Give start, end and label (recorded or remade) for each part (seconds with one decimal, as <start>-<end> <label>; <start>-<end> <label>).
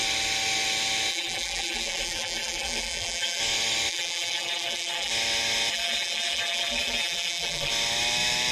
0.0-1.1 recorded; 1.1-3.4 remade; 3.4-3.9 recorded; 3.9-5.1 remade; 5.1-5.7 recorded; 5.7-7.7 remade; 7.7-8.5 recorded